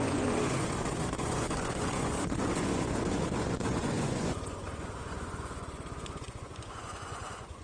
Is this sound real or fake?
fake